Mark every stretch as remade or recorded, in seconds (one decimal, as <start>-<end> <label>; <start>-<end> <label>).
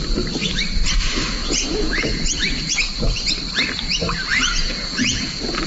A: 0.0-1.4 recorded; 1.4-2.6 remade; 2.6-4.3 recorded; 4.3-5.7 remade